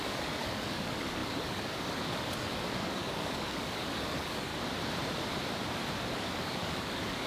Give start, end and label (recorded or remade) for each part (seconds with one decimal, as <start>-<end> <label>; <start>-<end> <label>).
0.0-4.5 remade; 4.5-6.0 recorded; 6.0-7.3 remade